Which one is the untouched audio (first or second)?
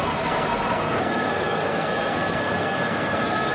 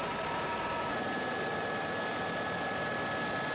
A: second